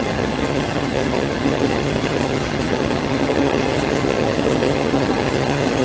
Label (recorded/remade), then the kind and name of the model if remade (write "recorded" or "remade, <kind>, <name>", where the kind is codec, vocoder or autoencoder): remade, vocoder, HiFi-GAN